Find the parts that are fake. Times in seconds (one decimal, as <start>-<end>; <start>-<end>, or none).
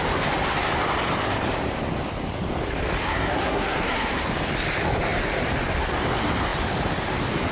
3.0-4.3